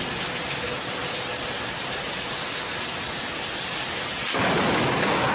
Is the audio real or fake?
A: real